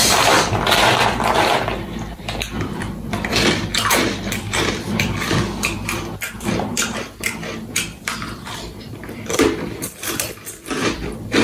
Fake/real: fake